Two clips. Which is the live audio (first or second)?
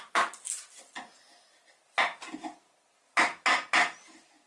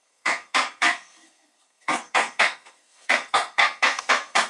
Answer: first